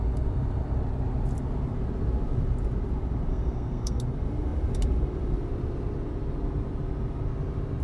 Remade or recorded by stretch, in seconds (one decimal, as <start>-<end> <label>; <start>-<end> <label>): 0.0-3.3 recorded; 3.3-4.0 remade; 4.0-7.8 recorded

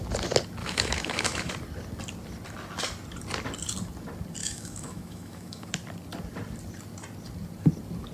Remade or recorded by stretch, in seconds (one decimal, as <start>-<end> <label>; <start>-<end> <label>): 0.0-0.6 recorded; 0.6-1.5 remade; 1.5-4.4 recorded; 4.4-5.7 remade; 5.7-8.1 recorded

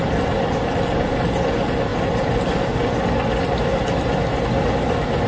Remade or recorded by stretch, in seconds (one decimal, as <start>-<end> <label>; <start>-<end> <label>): 0.0-5.3 recorded

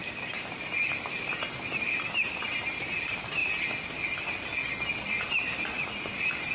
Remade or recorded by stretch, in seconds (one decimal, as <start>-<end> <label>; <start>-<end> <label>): 0.0-3.4 remade; 3.4-5.1 recorded; 5.1-6.5 remade